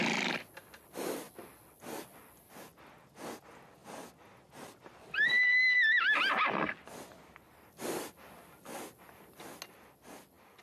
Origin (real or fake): real